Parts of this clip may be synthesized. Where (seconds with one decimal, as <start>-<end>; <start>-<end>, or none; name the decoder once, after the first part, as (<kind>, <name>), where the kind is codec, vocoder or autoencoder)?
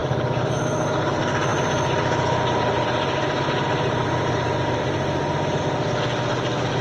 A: 0.0-0.6 (vocoder, BigVGAN v2); 1.5-5.6